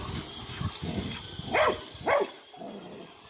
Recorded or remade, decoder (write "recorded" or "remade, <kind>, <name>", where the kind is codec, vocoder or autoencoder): recorded